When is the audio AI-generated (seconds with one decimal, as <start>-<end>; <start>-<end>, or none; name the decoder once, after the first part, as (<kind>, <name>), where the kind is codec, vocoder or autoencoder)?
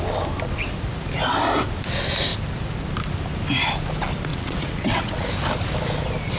4.3-5.3 (vocoder, WaveNeXt)